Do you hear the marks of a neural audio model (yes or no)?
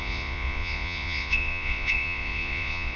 yes